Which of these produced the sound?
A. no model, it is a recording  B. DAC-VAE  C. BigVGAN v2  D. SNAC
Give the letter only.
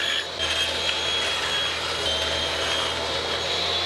A